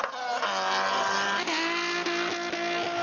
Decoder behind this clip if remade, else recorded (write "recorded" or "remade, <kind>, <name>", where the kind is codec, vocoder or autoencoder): recorded